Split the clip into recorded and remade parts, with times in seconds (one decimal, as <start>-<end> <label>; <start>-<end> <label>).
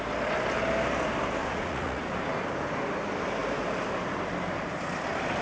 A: 0.0-1.4 recorded; 1.4-2.0 remade; 2.0-5.4 recorded